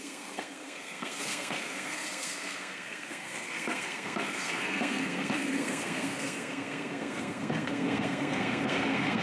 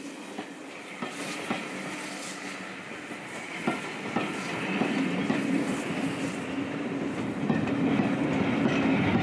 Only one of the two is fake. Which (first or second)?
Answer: first